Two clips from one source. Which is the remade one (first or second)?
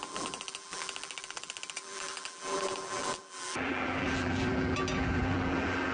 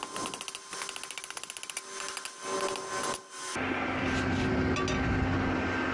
first